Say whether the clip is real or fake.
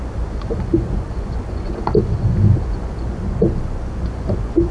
fake